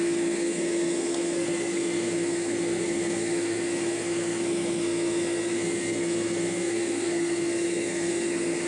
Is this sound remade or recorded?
remade